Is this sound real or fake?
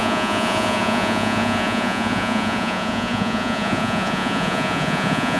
fake